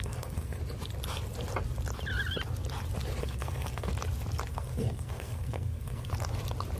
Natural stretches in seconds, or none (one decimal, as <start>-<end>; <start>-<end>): 0.6-3.2; 3.9-4.5; 6.1-6.8